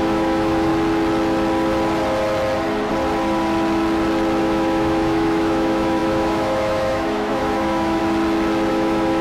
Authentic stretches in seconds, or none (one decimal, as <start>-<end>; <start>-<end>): 0.7-4.4; 8.0-8.7